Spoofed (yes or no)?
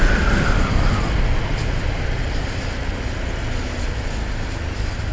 no